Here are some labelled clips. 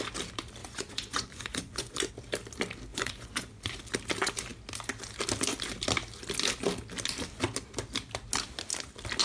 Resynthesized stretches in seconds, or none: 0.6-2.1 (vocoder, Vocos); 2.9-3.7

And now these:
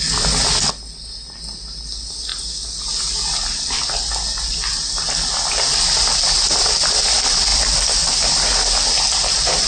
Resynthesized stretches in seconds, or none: none

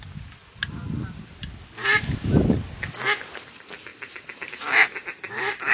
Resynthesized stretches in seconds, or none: none

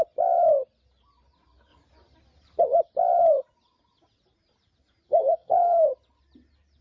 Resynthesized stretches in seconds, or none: 5.1-5.9 (codec, SNAC)